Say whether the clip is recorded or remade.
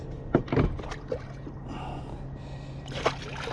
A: recorded